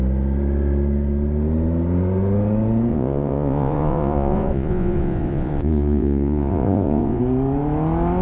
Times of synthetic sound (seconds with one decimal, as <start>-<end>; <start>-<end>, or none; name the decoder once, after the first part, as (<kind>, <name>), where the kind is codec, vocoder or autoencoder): 2.9-7.2 (vocoder, Vocos)